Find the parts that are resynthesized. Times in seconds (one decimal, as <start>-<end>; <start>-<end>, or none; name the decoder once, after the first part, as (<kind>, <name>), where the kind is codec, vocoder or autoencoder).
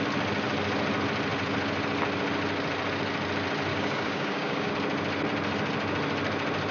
3.7-4.7 (codec, DAC)